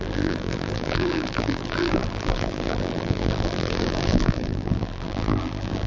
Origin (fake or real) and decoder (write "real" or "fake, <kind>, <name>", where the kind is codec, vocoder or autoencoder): fake, vocoder, BigVGAN v2